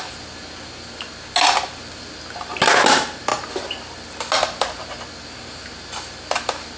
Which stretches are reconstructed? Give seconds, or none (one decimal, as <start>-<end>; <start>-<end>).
none